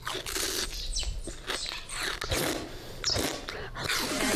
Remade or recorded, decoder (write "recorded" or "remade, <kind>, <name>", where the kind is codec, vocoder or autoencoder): recorded